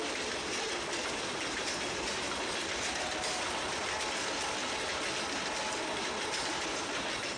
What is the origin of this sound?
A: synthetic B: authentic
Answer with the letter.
B